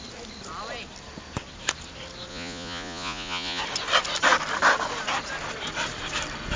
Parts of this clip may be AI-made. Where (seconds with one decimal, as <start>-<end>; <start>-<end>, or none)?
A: 2.3-3.6